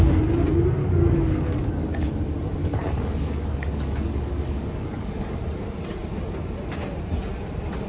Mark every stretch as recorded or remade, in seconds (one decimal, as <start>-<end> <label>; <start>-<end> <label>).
0.0-0.8 recorded; 0.8-2.1 remade; 2.1-2.6 recorded; 2.6-5.4 remade; 5.4-7.9 recorded